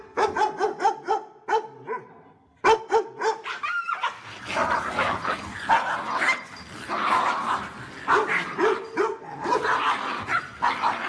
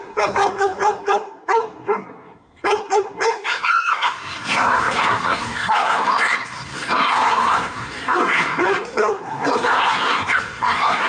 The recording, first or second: first